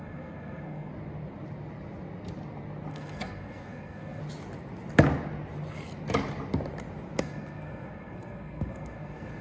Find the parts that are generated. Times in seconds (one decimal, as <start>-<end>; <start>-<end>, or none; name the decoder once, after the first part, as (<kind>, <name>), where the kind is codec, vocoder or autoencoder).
0.0-0.9 (codec, SNAC); 2.9-4.2; 7.2-9.4